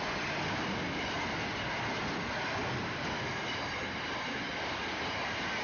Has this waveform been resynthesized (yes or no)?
no